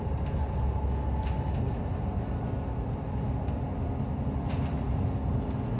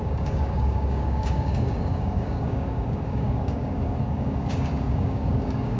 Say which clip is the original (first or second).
first